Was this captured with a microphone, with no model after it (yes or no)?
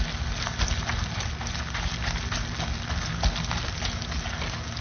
yes